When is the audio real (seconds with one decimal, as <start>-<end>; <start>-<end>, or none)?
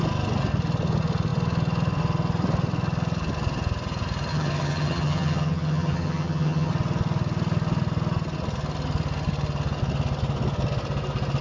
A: 0.0-4.3; 6.7-11.4